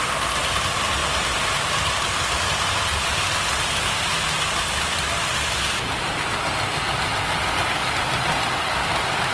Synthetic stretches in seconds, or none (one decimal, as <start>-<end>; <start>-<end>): none